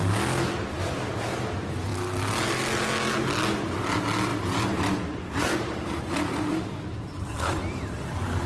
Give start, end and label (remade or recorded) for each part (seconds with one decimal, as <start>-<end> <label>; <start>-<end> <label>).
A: 0.0-4.3 recorded; 4.3-8.5 remade